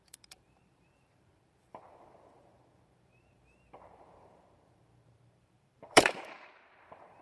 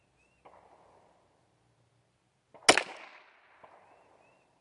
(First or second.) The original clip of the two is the second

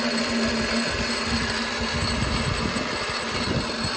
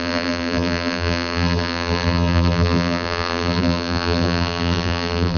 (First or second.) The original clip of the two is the first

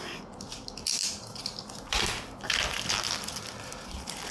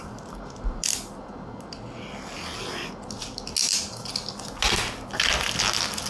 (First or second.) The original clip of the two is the second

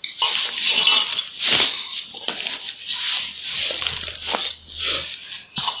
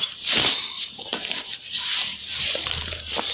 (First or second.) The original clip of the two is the first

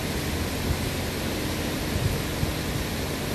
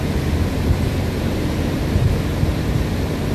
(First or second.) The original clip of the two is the first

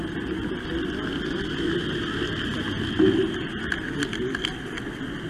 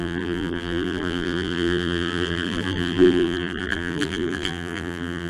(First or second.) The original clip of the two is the first